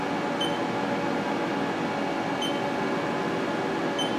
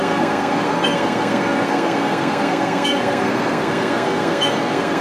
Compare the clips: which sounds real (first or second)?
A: first